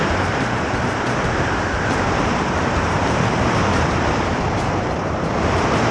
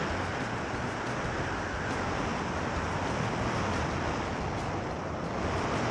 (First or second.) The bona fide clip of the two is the second